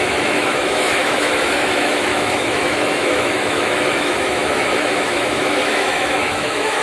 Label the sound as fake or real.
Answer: fake